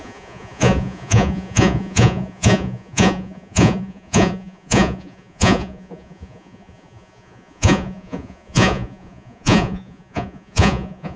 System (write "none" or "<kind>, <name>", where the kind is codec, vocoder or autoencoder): vocoder, Vocos